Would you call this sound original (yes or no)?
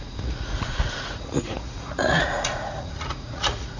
no